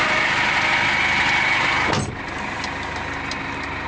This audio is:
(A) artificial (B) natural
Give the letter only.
B